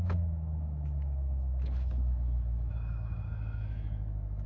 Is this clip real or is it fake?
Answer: fake